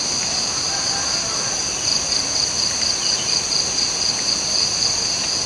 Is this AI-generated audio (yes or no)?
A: no